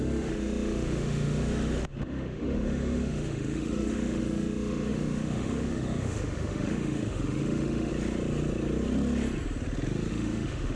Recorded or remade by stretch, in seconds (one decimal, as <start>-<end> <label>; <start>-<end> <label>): 0.0-7.9 remade; 7.9-10.1 recorded; 10.1-10.8 remade